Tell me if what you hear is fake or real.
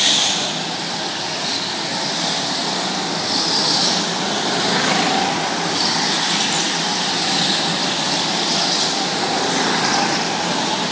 real